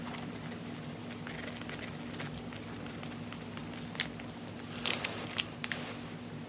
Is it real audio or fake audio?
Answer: real